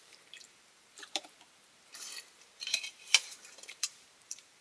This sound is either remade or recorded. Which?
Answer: remade